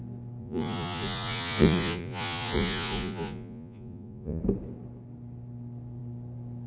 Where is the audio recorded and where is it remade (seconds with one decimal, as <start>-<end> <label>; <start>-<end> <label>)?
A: 0.0-0.4 recorded; 0.4-4.4 remade; 4.4-6.7 recorded